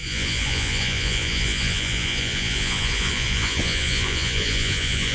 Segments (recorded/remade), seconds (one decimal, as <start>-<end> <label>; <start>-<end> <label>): 0.0-5.1 remade